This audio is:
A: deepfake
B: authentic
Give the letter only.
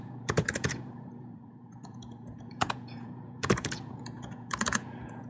A